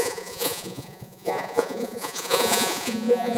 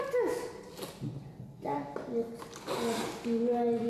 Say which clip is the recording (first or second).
second